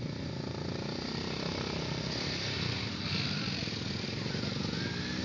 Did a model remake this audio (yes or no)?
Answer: no